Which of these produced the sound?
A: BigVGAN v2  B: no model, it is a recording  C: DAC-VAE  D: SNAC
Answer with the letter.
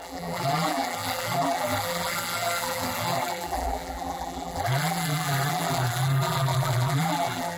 A